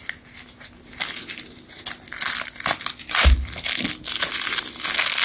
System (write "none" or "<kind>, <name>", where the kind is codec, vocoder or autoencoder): none